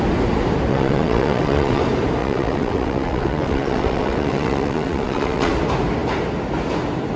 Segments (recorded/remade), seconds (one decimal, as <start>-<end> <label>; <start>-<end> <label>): 0.0-0.7 recorded; 0.7-1.8 remade; 1.8-2.2 recorded; 2.2-5.5 remade; 5.5-7.2 recorded